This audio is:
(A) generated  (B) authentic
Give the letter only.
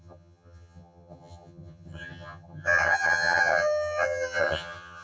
A